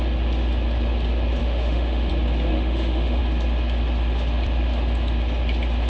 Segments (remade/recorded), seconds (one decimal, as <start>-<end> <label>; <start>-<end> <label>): 0.0-1.4 recorded; 1.4-2.1 remade; 2.1-2.5 recorded; 2.5-3.2 remade; 3.2-5.9 recorded